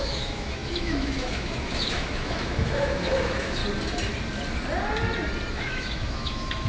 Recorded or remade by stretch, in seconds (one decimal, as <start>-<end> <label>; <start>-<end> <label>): 0.0-3.6 remade; 3.6-5.5 recorded; 5.5-6.7 remade